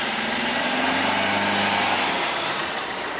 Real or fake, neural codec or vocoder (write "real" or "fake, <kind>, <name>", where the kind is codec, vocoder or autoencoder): real